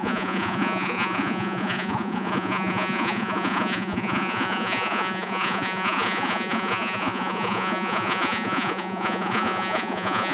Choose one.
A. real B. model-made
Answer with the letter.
B